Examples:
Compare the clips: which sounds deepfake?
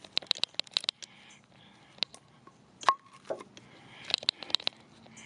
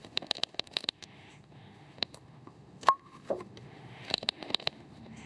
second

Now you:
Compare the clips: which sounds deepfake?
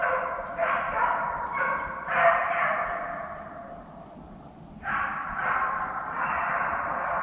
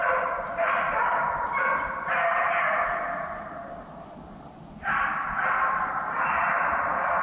first